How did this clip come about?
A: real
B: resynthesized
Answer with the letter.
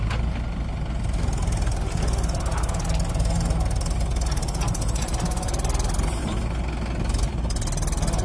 A